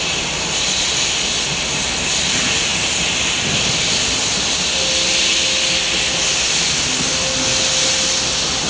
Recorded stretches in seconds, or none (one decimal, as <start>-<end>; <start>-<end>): 0.0-8.7